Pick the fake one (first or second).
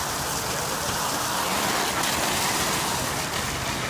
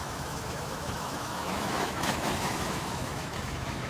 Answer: second